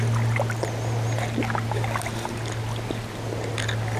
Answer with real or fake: real